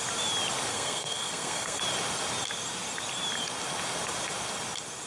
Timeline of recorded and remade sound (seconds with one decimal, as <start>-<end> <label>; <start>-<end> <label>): 0.0-0.7 recorded; 0.7-1.8 remade; 1.8-5.1 recorded